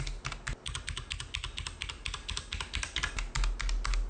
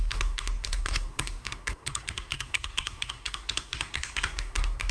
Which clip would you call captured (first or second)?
first